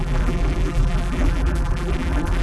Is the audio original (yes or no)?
no